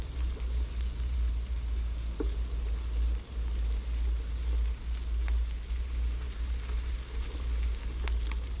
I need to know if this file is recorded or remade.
recorded